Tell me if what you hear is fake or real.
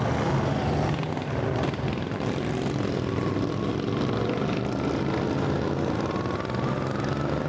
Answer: real